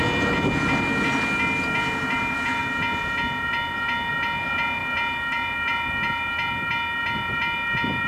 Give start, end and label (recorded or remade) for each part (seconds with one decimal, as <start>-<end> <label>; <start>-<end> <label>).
0.0-8.1 recorded